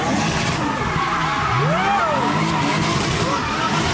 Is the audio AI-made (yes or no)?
no